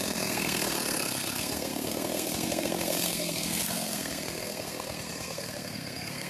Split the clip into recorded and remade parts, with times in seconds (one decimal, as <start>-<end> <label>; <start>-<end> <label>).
0.0-6.3 remade